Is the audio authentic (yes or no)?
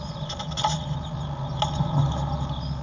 yes